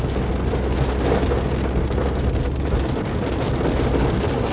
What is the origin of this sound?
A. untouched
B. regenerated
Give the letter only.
A